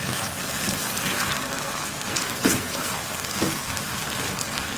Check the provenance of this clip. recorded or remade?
remade